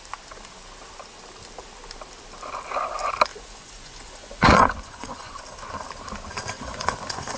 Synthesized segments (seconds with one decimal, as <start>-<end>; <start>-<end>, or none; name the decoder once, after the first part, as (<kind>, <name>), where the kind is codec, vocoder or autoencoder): 3.3-5.4 (vocoder, Vocos); 6.5-7.4